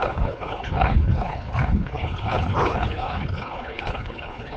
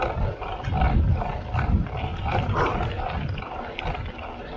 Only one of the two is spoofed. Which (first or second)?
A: first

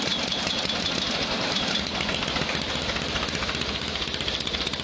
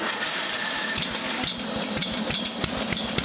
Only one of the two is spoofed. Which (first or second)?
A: first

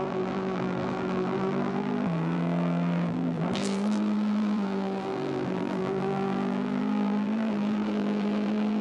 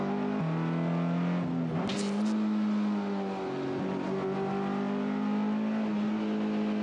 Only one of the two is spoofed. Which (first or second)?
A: first